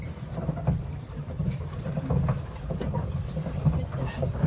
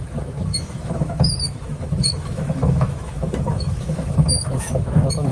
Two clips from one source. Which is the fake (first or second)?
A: second